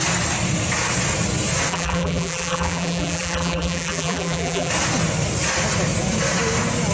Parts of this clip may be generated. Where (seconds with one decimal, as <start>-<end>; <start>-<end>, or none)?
1.7-4.7

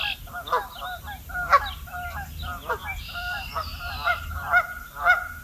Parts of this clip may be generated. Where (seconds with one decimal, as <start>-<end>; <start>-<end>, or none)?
2.6-4.3

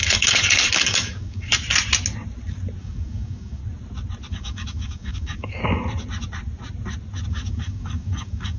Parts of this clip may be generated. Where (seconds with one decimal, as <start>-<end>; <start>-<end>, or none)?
0.0-1.5; 2.8-3.6; 4.3-5.6; 7.3-8.6

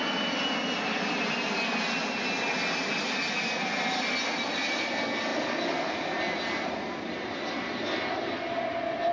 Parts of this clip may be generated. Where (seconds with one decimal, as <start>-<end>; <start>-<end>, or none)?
2.0-2.5

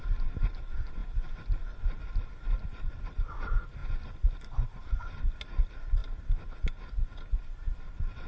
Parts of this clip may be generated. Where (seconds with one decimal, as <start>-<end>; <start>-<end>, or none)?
0.0-1.0; 2.0-3.8; 5.0-6.0

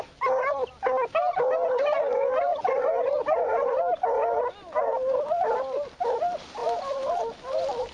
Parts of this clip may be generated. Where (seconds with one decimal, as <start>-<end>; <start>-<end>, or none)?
2.5-3.1; 6.6-7.1

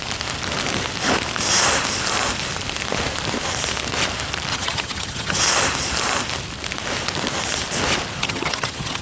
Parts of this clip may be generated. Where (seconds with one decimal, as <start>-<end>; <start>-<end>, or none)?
4.5-5.4; 8.2-9.0

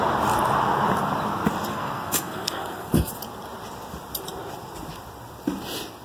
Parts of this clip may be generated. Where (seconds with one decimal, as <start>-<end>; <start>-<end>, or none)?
1.7-3.1